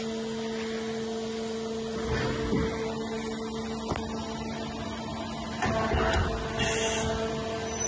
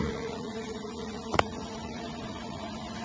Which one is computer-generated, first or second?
second